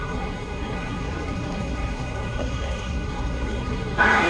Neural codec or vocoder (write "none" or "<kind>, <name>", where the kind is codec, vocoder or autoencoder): codec, SNAC